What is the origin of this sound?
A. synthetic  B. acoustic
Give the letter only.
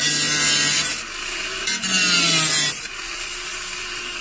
B